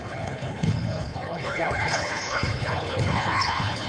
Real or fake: fake